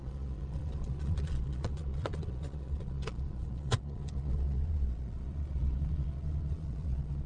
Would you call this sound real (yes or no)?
no